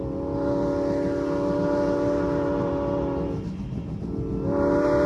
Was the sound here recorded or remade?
recorded